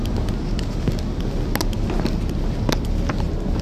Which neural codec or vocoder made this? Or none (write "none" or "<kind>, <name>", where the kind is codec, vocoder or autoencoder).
none